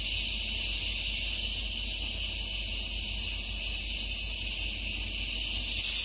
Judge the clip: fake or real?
real